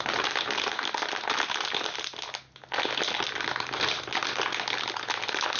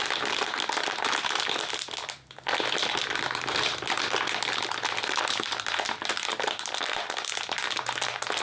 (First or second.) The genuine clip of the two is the first